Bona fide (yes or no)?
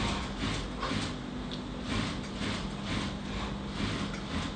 yes